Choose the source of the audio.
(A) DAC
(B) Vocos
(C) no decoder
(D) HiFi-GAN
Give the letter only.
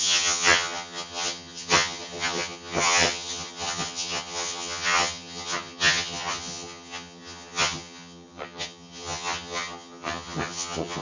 D